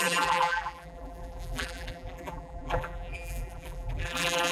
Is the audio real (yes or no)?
no